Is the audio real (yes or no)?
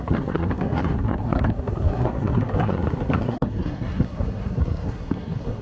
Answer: no